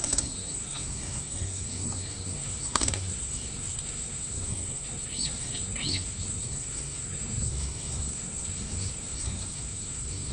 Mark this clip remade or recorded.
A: remade